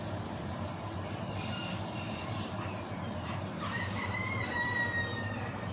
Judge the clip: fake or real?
fake